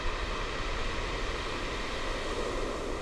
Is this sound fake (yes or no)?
no